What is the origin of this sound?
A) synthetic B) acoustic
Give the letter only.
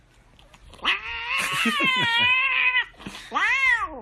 B